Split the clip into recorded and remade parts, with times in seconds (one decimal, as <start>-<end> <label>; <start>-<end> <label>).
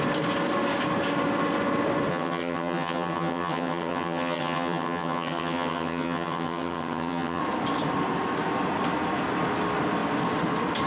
0.0-2.1 recorded; 2.1-7.4 remade; 7.4-10.9 recorded